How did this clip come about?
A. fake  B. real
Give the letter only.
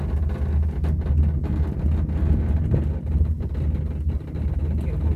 B